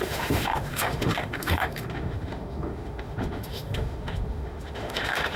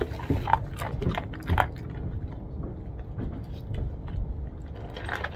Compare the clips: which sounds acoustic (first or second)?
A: second